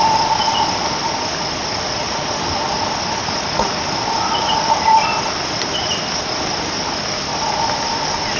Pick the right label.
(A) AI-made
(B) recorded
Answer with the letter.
B